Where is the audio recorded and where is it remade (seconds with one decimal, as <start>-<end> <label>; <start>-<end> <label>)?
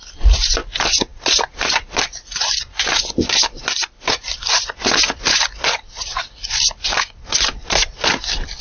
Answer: 0.0-8.6 remade